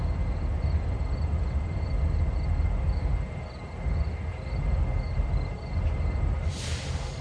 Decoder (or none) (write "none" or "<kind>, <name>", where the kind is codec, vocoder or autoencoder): none